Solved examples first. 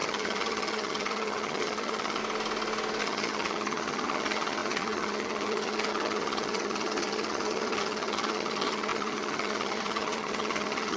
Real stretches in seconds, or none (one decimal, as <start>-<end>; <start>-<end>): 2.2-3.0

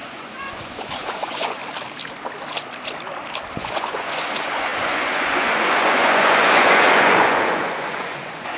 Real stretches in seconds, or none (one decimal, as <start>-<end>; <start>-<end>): 1.6-3.5

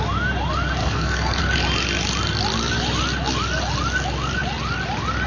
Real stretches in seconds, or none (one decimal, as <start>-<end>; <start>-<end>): 0.0-0.8; 1.4-5.3

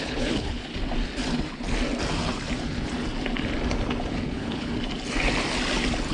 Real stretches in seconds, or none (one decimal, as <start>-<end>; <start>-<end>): 0.6-4.3; 4.7-6.1